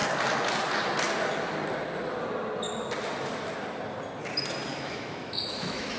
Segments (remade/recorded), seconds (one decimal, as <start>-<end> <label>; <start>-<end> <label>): 0.0-4.7 recorded; 4.7-6.0 remade